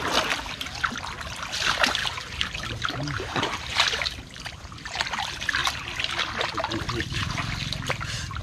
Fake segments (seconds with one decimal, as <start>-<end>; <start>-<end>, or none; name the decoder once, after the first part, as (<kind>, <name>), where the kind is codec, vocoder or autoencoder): 2.0-5.0 (vocoder, BigVGAN v2)